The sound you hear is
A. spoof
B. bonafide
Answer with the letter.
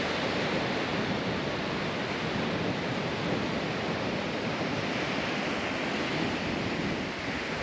B